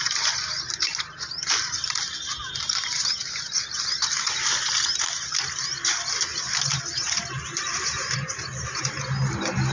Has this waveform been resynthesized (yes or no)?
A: yes